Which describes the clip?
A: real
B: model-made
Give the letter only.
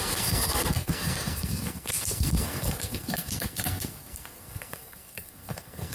B